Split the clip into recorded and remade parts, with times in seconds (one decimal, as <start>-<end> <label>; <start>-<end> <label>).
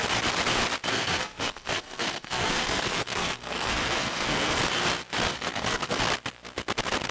0.0-0.9 recorded; 0.9-4.6 remade; 4.6-5.3 recorded; 5.3-6.0 remade; 6.0-7.1 recorded